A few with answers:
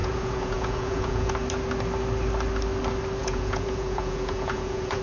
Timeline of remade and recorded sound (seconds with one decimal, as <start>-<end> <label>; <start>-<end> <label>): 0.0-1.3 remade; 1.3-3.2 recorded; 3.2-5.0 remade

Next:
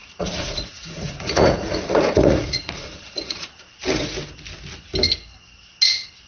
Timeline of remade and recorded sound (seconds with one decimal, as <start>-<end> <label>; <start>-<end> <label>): 0.0-3.8 remade; 3.8-6.3 recorded

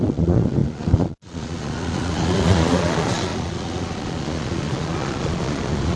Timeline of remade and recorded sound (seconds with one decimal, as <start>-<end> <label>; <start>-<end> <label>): 0.0-6.0 remade